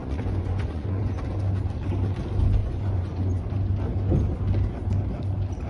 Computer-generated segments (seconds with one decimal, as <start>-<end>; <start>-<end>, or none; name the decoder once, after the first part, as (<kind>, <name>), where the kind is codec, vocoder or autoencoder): 0.0-1.2 (vocoder, Vocos); 2.6-3.4